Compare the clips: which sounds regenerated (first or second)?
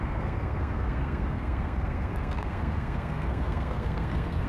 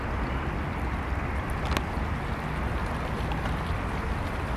first